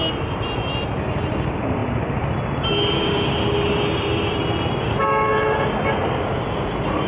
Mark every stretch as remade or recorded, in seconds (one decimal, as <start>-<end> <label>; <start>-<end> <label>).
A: 0.0-7.1 recorded